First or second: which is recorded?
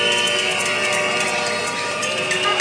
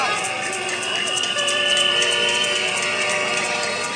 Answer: first